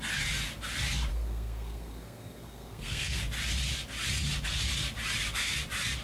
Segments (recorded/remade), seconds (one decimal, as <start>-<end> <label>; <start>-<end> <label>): 0.0-1.1 recorded; 1.1-3.2 remade; 3.2-6.0 recorded